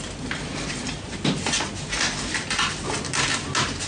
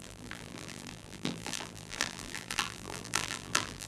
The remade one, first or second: second